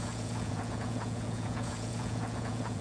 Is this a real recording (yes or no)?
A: no